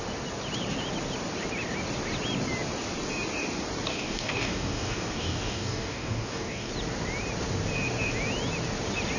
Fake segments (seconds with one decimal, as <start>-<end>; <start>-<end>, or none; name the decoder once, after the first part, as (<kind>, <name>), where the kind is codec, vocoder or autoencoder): 3.9-6.7 (codec, DAC)